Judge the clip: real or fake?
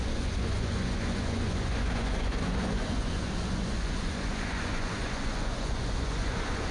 fake